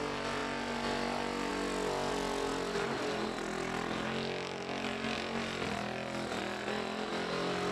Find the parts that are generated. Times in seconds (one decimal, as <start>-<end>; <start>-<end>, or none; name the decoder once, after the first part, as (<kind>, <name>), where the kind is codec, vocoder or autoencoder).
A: none